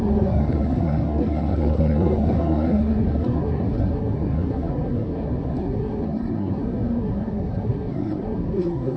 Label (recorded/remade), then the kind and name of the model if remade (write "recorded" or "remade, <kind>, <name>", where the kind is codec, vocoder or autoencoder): remade, codec, SNAC